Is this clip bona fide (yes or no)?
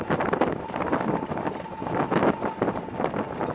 yes